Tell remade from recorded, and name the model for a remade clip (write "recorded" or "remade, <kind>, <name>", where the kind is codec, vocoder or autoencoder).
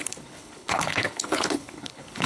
remade, codec, HILCodec